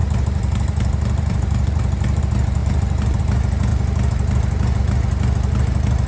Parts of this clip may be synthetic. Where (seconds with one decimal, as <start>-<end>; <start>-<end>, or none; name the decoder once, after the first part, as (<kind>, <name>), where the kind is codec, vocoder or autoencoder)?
0.0-2.2 (vocoder, BigVGAN v2); 2.6-3.2